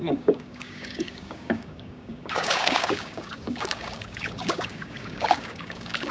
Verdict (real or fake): fake